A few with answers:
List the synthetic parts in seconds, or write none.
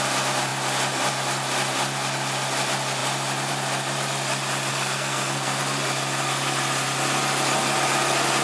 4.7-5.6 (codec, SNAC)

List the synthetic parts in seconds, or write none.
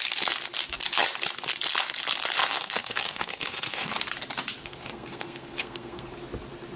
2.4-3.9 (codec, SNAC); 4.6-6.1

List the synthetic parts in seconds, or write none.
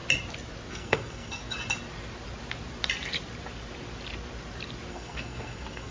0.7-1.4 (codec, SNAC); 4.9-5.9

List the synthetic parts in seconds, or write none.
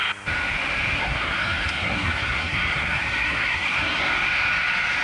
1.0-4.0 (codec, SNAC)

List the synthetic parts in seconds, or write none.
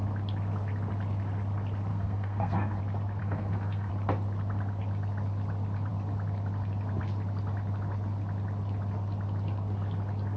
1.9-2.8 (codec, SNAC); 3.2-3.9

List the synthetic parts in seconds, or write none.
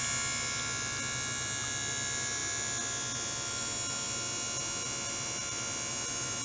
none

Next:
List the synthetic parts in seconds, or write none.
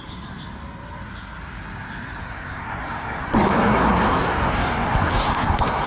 2.2-5.9 (codec, SNAC)